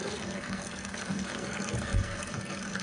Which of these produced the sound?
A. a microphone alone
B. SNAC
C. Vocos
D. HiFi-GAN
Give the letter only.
B